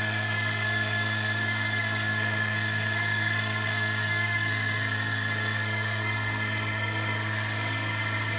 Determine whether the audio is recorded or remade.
remade